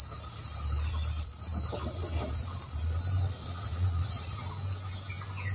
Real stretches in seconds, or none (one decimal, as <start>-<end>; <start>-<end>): 0.0-3.4; 4.5-5.5